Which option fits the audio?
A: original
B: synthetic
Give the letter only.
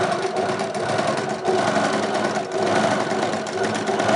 A